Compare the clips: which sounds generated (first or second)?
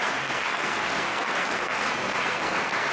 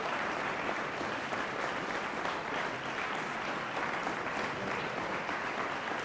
first